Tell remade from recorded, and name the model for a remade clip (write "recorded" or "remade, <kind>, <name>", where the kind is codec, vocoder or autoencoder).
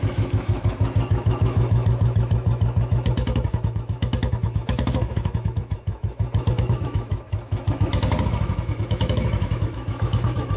remade, autoencoder, DAC-VAE